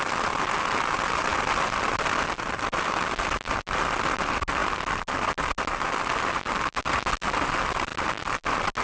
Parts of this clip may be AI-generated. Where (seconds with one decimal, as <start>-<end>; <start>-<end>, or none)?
none